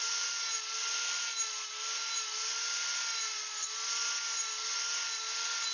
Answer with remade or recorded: recorded